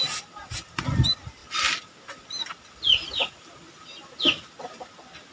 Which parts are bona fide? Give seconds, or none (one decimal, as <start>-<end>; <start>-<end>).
0.0-5.3